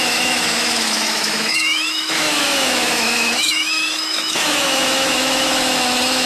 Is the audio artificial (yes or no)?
yes